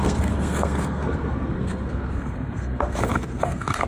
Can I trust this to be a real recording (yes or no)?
no